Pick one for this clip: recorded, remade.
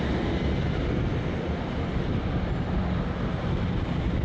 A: recorded